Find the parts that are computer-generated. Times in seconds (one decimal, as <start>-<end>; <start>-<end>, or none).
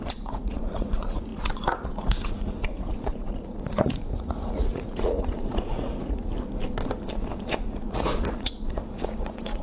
0.0-6.3; 7.5-9.6